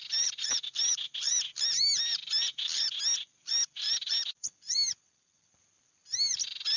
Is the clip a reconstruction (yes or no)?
yes